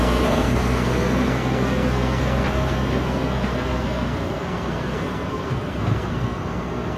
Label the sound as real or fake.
fake